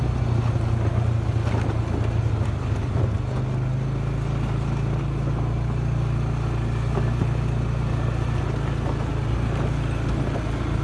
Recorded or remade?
recorded